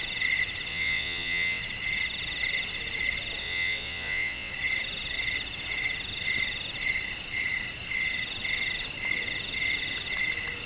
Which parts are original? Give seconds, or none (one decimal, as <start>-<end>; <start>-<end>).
0.0-0.7; 1.6-3.4; 4.5-10.7